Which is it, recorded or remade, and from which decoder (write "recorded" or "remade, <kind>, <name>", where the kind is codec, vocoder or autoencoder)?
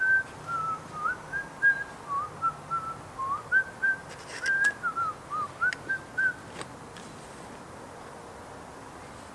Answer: recorded